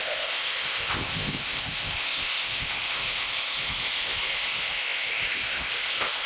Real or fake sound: fake